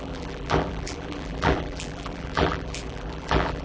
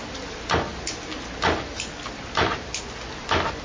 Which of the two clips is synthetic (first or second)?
first